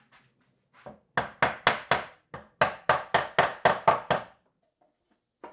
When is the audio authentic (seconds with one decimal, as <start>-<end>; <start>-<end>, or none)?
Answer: 0.0-5.5